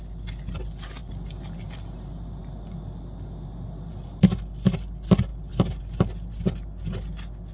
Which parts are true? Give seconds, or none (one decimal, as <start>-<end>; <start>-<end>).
0.0-7.5